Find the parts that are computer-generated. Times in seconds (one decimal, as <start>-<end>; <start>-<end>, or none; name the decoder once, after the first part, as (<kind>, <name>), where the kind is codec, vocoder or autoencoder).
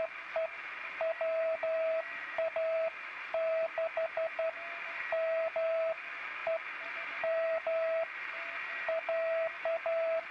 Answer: none